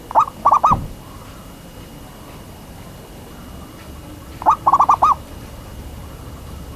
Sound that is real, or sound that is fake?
real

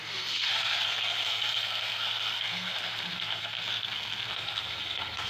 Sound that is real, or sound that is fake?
fake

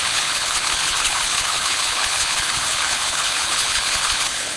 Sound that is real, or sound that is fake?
fake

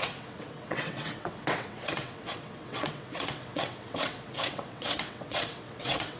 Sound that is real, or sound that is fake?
fake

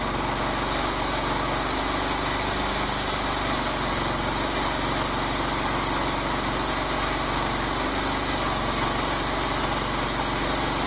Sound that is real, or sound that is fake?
real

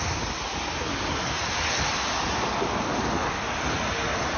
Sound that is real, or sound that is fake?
real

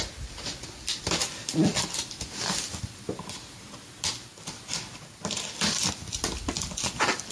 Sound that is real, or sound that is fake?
real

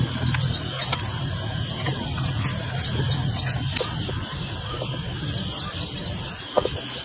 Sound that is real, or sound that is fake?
real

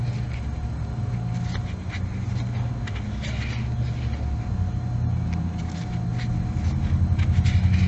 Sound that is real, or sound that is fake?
real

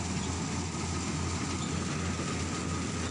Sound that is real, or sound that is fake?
real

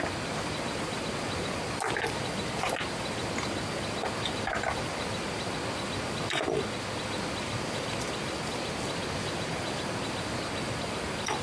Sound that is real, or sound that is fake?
real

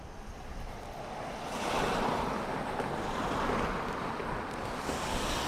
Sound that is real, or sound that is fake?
real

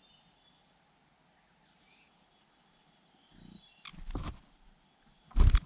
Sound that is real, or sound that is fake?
real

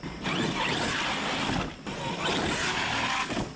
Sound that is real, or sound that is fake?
real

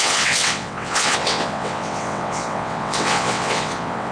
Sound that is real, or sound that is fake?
fake